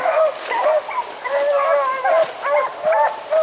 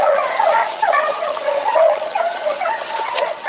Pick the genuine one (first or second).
first